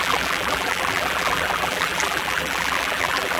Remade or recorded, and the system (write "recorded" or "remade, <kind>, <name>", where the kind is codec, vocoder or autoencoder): remade, vocoder, BigVGAN v2